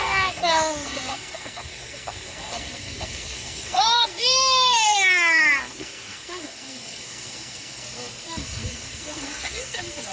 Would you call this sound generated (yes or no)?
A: yes